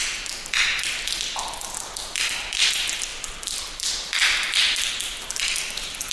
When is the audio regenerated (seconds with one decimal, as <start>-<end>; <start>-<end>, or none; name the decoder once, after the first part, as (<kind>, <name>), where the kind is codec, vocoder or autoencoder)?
3.1-4.9 (vocoder, BigVGAN v2)